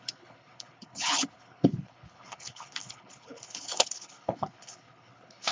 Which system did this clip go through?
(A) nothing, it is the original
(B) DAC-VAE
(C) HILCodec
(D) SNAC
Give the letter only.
C